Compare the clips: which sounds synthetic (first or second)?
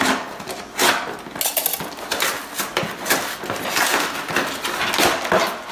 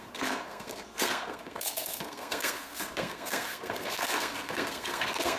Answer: second